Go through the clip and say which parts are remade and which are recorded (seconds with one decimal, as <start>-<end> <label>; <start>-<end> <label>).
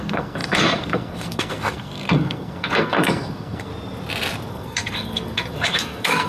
0.0-3.7 remade; 3.7-4.5 recorded; 4.5-6.3 remade